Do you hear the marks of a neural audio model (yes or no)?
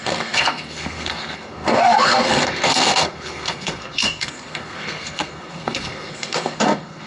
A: yes